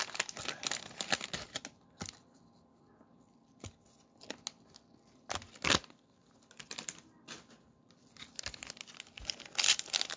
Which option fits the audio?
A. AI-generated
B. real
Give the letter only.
B